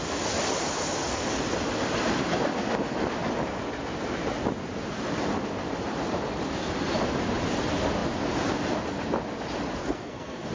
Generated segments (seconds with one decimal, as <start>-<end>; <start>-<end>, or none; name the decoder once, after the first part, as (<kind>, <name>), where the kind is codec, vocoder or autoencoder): 9.8-10.5 (codec, SNAC)